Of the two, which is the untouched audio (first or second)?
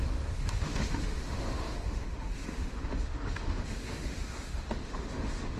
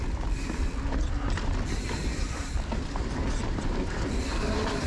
second